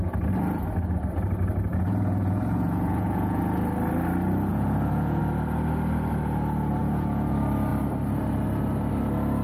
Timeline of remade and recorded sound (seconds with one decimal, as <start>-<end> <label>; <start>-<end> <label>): 0.0-1.7 recorded; 1.7-3.4 remade; 3.4-4.5 recorded; 4.5-5.2 remade; 5.2-6.8 recorded; 6.8-7.3 remade; 7.3-9.4 recorded